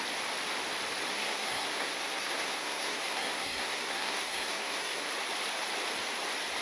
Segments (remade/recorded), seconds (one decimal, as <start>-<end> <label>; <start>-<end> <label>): 0.0-1.1 recorded; 1.1-5.1 remade; 5.1-6.6 recorded